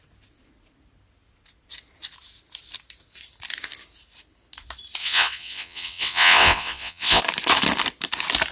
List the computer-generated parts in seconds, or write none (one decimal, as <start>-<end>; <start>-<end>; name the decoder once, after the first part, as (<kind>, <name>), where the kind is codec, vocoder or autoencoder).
5.0-7.2 (vocoder, WaveNeXt)